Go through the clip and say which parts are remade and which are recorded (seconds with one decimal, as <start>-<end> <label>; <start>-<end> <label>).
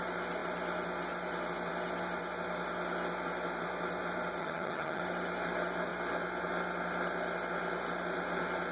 0.0-4.4 recorded; 4.4-5.0 remade; 5.0-8.7 recorded